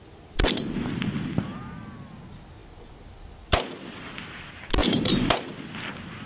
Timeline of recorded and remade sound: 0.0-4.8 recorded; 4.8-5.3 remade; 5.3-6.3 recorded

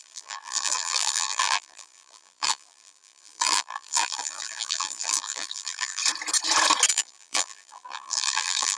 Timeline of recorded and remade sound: 0.0-6.0 remade; 6.0-6.9 recorded; 6.9-8.8 remade

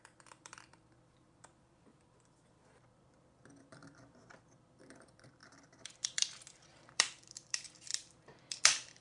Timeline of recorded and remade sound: 0.0-9.0 remade

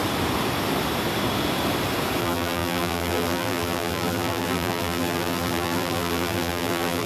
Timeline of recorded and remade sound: 0.0-2.2 recorded; 2.2-7.1 remade

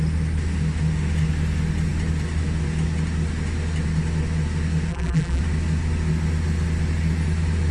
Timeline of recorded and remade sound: 0.0-4.9 recorded; 4.9-5.4 remade; 5.4-7.7 recorded

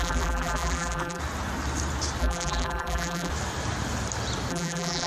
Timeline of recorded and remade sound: 0.0-1.2 remade; 1.2-2.2 recorded; 2.2-3.3 remade; 3.3-4.5 recorded; 4.5-5.1 remade

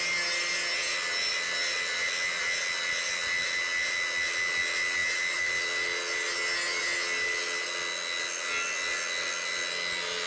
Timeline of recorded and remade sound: 0.0-10.3 recorded